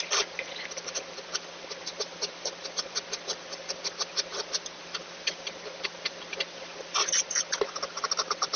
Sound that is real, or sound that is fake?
real